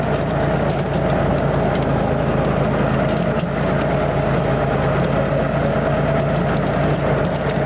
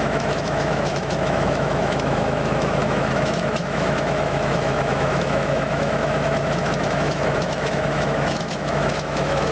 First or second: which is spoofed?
second